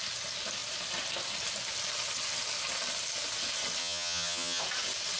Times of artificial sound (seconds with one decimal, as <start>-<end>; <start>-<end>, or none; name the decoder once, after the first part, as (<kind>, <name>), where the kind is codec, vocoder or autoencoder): 3.8-4.6 (vocoder, HiFi-GAN)